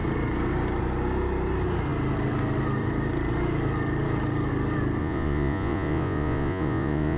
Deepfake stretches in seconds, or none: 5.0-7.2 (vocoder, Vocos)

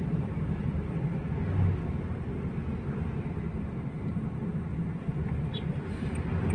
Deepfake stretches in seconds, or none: none

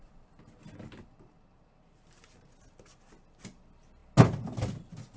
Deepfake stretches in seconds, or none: none

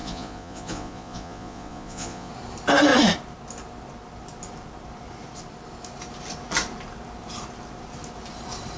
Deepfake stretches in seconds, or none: 0.0-2.3 (vocoder, Vocos)

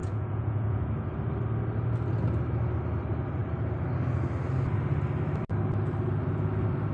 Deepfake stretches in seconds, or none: 0.0-1.1 (vocoder, Vocos)